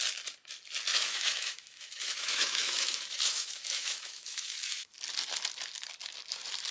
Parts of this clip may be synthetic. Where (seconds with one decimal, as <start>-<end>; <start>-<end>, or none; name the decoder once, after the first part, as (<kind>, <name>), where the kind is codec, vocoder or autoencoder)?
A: 0.9-4.9 (autoencoder, DAC-VAE)